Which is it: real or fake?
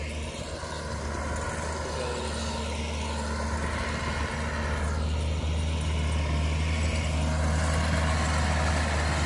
real